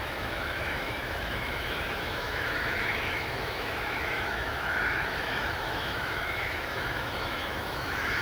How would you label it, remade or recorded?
remade